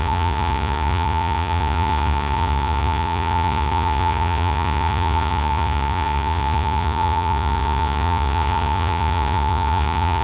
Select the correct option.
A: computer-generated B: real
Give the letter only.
A